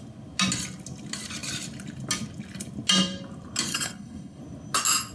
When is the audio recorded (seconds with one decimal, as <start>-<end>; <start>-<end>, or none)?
0.0-3.7; 4.4-5.1